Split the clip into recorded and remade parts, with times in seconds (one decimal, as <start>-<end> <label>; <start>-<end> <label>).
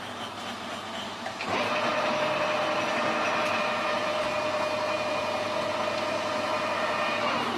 0.0-7.6 recorded